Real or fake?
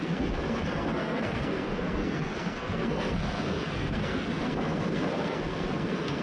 fake